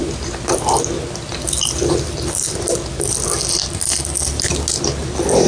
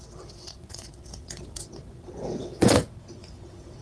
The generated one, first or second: second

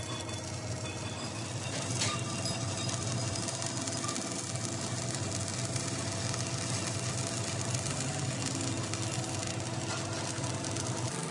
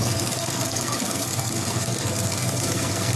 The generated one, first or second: second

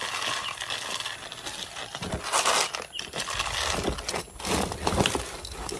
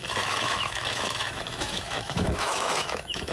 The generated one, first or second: second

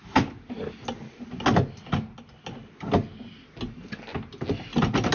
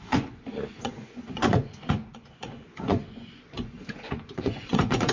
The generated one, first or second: second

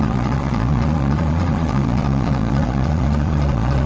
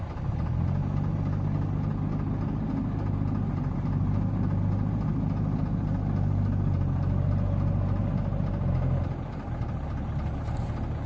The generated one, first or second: first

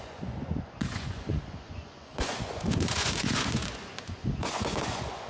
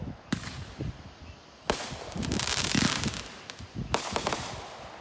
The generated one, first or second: first